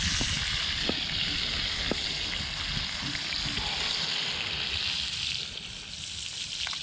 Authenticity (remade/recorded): recorded